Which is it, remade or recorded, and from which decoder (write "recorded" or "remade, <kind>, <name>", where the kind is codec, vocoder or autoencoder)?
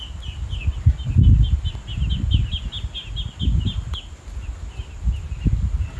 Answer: recorded